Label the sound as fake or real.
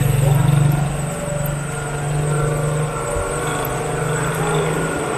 real